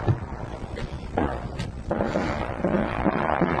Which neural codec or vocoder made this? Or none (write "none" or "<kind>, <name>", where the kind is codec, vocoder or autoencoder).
vocoder, Vocos